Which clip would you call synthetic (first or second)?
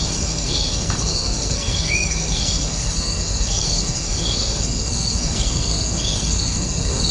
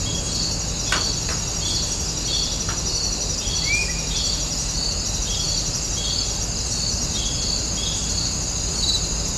first